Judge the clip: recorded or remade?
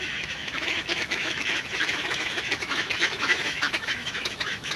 remade